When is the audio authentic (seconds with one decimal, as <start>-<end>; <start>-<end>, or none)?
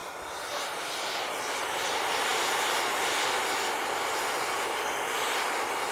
0.0-5.9